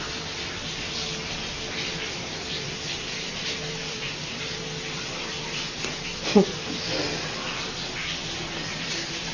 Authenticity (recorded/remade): remade